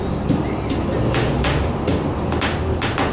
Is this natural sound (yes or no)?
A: yes